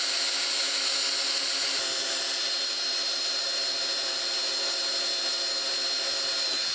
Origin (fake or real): real